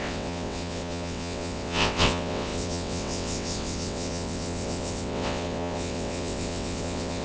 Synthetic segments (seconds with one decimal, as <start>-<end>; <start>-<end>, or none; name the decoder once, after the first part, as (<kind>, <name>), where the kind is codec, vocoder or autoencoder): 0.0-7.2 (vocoder, WaveNeXt)